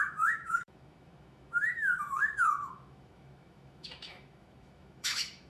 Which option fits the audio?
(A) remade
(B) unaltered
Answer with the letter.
A